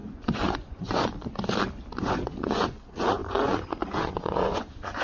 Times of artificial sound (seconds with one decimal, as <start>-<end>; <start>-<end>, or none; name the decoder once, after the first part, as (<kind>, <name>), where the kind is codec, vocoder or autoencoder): 0.0-1.1 (vocoder, Vocos); 2.0-5.0